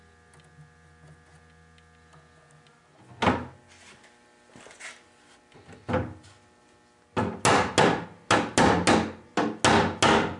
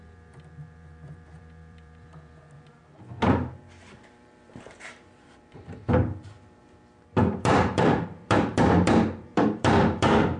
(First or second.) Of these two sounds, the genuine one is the first